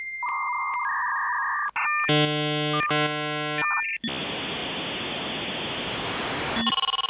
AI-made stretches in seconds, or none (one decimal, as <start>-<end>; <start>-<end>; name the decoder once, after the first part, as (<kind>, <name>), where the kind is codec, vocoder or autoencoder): none